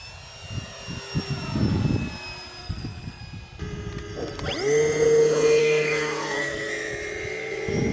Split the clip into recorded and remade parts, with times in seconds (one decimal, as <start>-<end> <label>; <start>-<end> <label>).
0.0-2.6 recorded; 2.6-3.2 remade; 3.2-5.6 recorded; 5.6-6.7 remade; 6.7-7.9 recorded